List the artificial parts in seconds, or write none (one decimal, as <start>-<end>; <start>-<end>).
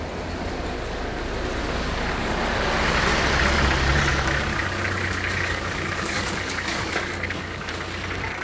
1.6-2.3; 4.1-7.7